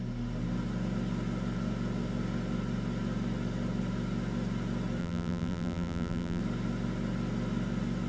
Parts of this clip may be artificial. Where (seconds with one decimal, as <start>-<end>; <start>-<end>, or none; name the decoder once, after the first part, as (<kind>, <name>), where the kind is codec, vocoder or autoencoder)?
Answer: 5.0-6.4 (vocoder, BigVGAN v2)